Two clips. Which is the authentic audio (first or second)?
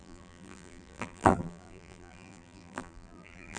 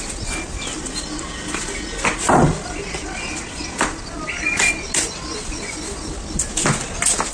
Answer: second